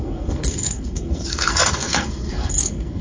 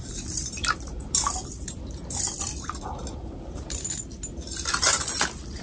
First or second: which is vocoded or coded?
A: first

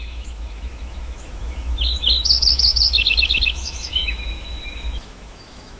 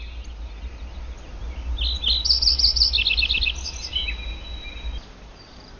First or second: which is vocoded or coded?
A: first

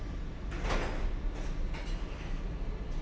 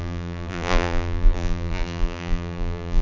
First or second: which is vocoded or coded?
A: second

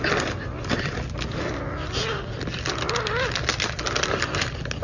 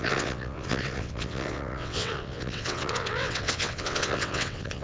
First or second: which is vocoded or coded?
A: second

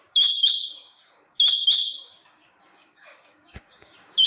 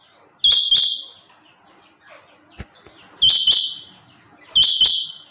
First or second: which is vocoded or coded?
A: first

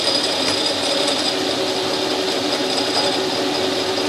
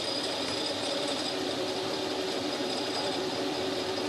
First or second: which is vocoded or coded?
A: second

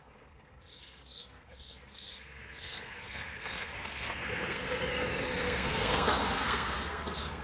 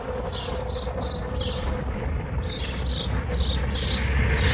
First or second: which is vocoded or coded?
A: first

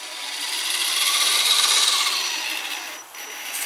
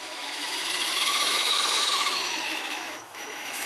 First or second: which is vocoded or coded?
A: second